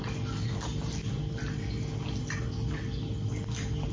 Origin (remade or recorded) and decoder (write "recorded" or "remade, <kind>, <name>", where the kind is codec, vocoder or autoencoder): recorded